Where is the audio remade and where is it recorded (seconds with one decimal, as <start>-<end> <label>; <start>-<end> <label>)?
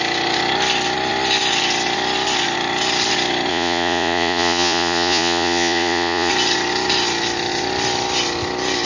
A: 0.0-3.5 recorded; 3.5-6.3 remade; 6.3-8.9 recorded